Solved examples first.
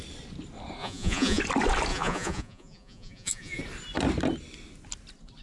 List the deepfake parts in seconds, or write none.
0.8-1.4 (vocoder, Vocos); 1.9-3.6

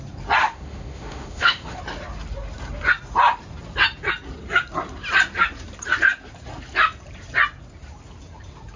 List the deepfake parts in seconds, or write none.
0.4-1.8 (autoencoder, DAC-VAE)

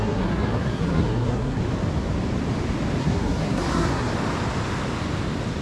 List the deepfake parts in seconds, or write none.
0.0-1.6 (codec, SNAC); 3.0-4.1

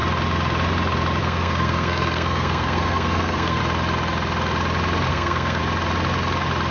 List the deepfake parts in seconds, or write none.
1.2-3.6 (codec, SNAC); 5.1-5.6